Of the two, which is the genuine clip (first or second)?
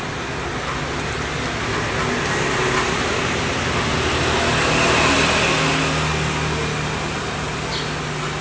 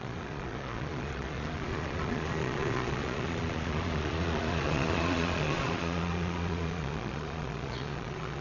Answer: first